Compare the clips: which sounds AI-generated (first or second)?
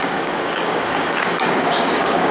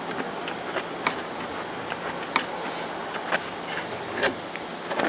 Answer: first